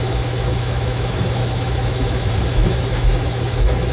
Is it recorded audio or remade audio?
remade